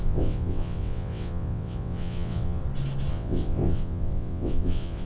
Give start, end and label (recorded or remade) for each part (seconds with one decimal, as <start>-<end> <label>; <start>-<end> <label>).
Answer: 0.0-2.6 remade; 2.6-3.1 recorded; 3.1-5.1 remade